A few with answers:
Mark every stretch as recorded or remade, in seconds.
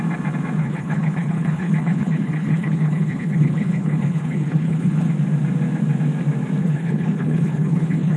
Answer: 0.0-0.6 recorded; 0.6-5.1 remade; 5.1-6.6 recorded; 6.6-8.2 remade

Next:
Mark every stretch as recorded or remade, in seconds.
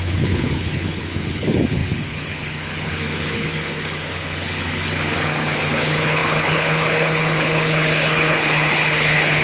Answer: 0.0-9.4 remade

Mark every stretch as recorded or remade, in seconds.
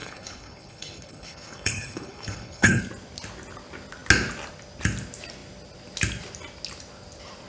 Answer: 0.0-2.8 remade; 2.8-7.5 recorded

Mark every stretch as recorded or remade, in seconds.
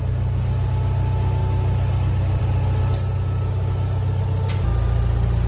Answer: 0.0-5.5 recorded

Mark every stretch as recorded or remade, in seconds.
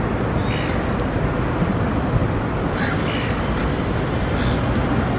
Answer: 0.0-5.2 recorded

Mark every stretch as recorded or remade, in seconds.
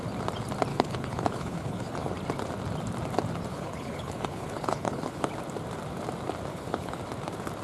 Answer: 0.0-0.7 recorded; 0.7-2.1 remade; 2.1-3.5 recorded; 3.5-5.3 remade; 5.3-6.5 recorded; 6.5-7.0 remade; 7.0-7.6 recorded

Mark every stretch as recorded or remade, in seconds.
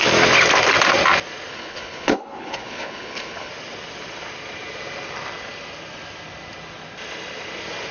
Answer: 0.0-1.5 recorded; 1.5-3.5 remade; 3.5-7.9 recorded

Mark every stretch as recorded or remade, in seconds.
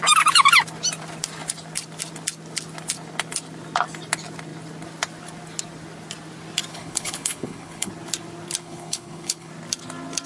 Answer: 0.0-6.7 recorded; 6.7-7.9 remade; 7.9-8.6 recorded; 8.6-9.5 remade; 9.5-10.3 recorded